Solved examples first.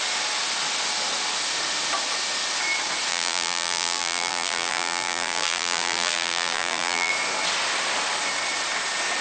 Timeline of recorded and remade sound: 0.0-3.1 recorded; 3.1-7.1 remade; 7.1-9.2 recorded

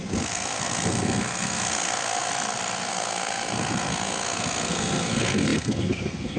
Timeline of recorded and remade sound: 0.0-2.3 remade; 2.3-2.9 recorded; 2.9-6.4 remade

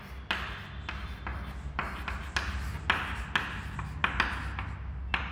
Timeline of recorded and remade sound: 0.0-5.3 recorded

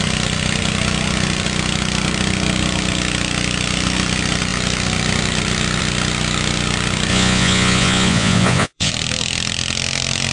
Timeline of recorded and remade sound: 0.0-7.1 recorded; 7.1-8.9 remade; 8.9-10.3 recorded